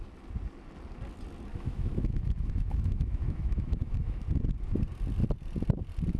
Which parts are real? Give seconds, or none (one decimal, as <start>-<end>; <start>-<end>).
0.0-1.5; 4.2-6.2